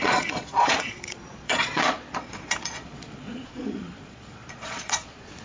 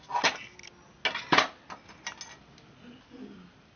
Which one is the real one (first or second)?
second